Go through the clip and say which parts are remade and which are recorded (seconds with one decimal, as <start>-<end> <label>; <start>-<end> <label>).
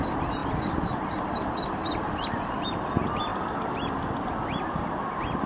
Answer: 0.0-5.5 recorded